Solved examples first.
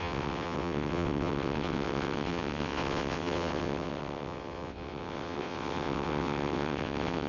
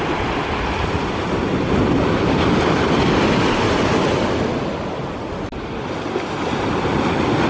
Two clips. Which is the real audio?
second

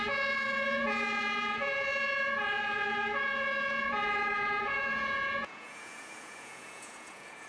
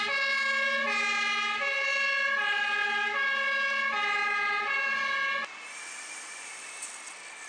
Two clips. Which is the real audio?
second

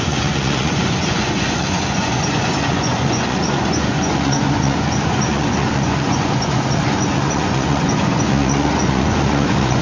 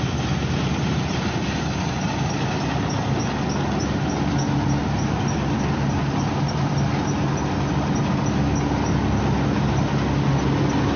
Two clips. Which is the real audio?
second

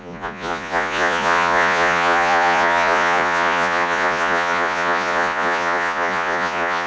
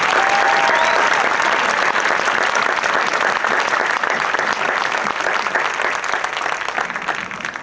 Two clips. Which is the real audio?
second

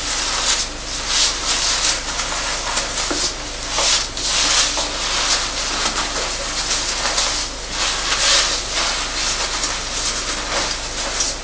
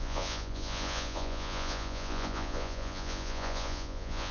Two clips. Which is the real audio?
first